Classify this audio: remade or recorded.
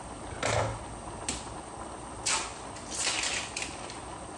recorded